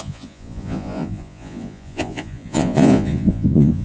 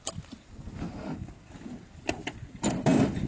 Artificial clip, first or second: first